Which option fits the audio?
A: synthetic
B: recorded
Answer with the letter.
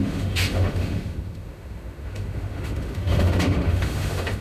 A